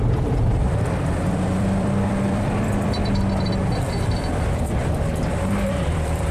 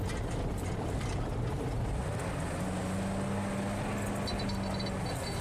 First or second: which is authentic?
second